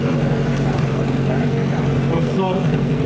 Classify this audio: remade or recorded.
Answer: remade